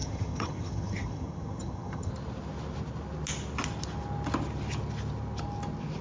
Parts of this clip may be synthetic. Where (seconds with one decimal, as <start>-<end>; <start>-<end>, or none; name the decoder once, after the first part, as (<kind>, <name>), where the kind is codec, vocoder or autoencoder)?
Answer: 0.0-2.1 (vocoder, HiFi-GAN)